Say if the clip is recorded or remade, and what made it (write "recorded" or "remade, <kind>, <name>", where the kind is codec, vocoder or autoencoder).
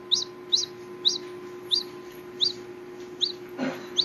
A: recorded